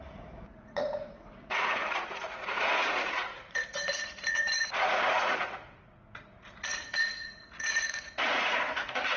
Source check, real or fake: fake